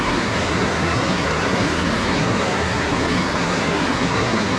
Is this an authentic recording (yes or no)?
no